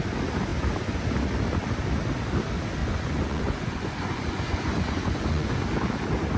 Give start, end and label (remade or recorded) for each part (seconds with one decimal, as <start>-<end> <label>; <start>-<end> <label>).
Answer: 0.0-2.8 recorded; 2.8-5.5 remade; 5.5-6.4 recorded